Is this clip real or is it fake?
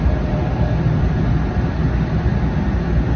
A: real